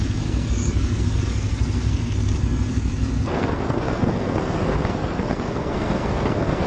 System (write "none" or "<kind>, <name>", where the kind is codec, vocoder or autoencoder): codec, SNAC